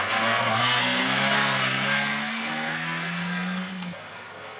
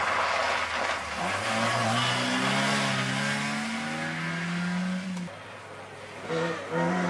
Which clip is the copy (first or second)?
first